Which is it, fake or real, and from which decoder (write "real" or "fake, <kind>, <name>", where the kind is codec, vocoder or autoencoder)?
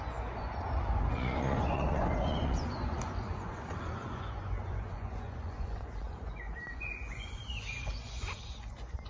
fake, vocoder, Vocos